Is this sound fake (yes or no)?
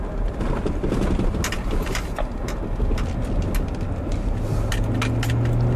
no